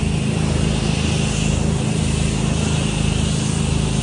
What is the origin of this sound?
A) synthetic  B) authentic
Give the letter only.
B